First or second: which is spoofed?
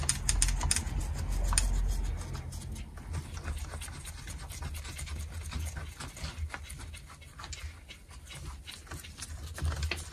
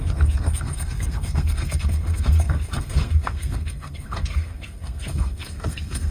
second